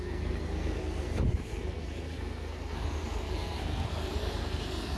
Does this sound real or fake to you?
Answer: fake